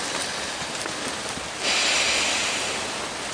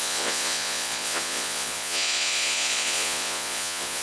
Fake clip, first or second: second